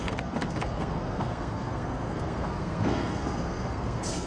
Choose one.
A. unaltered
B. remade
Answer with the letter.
B